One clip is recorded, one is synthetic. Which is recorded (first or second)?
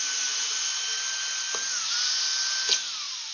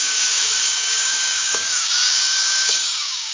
first